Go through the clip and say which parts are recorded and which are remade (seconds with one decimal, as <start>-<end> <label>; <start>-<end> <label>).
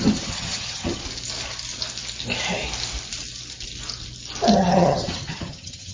0.0-1.0 remade; 1.0-4.5 recorded; 4.5-5.9 remade